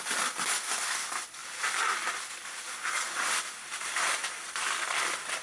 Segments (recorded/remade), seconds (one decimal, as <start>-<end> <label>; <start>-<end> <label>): 0.0-5.4 remade